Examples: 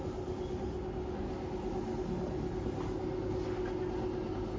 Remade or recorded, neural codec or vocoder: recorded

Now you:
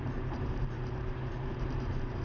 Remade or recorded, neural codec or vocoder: remade, vocoder, BigVGAN v2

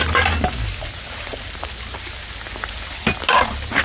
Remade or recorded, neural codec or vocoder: recorded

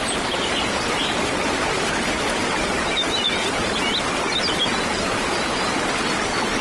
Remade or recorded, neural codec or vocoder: recorded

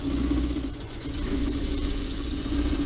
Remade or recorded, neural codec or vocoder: remade, vocoder, Vocos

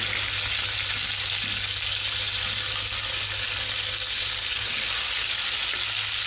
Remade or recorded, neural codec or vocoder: recorded